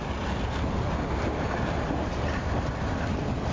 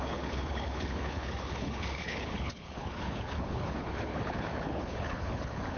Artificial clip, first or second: second